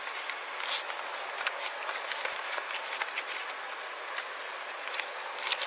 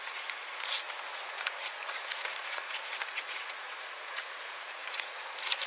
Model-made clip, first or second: second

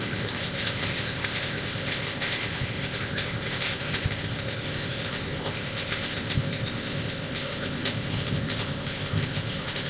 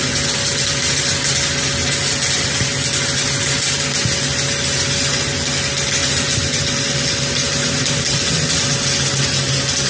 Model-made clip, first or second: first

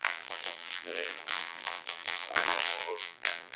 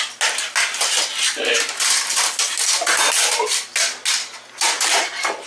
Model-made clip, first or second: first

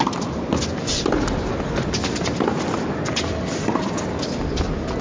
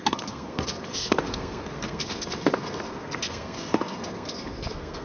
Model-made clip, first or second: second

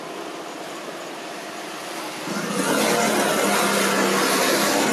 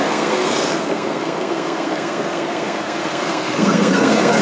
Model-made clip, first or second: second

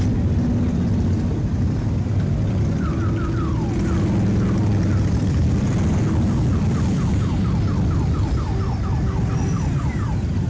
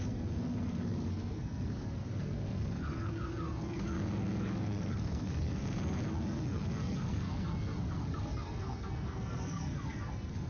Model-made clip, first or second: second